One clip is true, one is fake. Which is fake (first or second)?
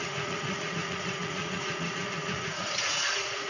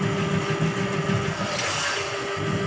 first